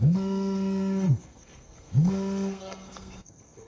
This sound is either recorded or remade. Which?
remade